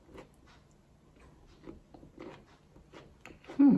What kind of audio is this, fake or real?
real